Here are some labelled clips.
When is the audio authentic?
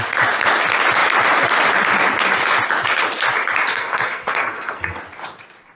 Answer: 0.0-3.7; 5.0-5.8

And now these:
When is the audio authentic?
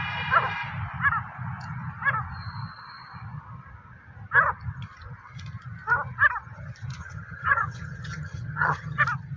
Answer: 0.0-7.0; 9.0-9.4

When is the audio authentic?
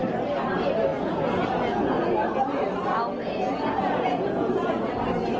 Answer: 0.0-0.9; 2.1-3.2; 4.9-5.4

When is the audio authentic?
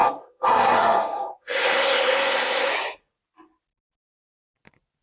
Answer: 2.7-5.0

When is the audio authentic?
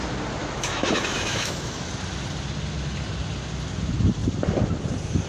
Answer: 0.0-0.4; 1.9-5.3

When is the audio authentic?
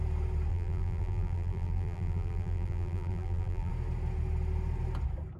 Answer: 0.0-0.5; 3.7-5.4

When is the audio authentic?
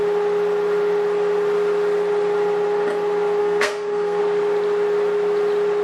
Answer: 0.0-3.4; 4.2-5.8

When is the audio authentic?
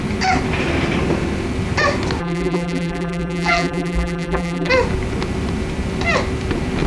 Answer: 0.0-2.2; 4.7-6.9